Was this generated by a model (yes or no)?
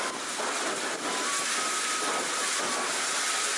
no